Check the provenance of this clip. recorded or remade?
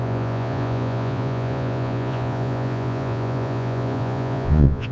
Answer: remade